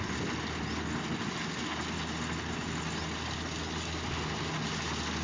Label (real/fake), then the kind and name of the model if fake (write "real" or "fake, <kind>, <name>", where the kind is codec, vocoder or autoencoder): real